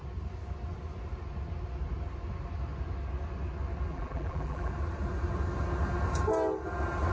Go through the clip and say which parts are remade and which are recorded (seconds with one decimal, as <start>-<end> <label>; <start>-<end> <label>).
0.0-3.9 recorded; 3.9-4.7 remade; 4.7-7.1 recorded